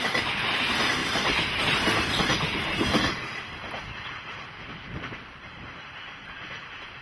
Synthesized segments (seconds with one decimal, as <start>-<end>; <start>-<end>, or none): 1.0-1.6